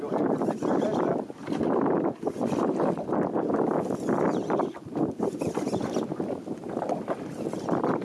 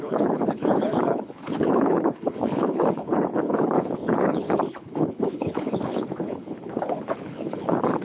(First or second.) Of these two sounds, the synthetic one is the second